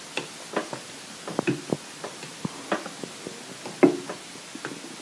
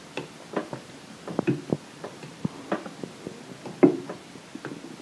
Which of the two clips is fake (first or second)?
second